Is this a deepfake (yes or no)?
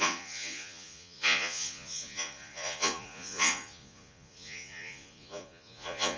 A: yes